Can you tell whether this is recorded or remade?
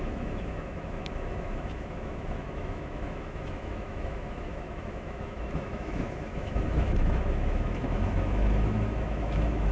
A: remade